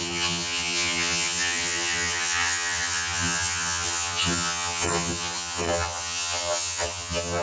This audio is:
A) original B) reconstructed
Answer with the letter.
B